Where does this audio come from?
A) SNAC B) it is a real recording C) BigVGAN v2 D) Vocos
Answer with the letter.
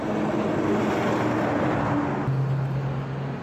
B